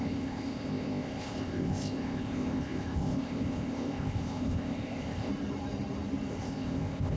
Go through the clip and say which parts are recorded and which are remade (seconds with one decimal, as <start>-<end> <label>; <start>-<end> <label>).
0.0-5.3 remade; 5.3-6.3 recorded; 6.3-7.2 remade